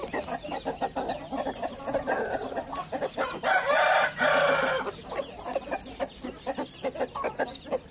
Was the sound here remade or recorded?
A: recorded